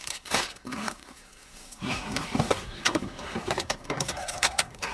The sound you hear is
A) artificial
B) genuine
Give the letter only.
A